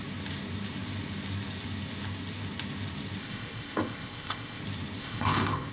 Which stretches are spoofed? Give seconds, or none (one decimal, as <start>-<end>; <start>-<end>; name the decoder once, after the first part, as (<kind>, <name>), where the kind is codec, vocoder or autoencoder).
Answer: 3.2-4.6 (codec, ZipCodec); 5.0-5.7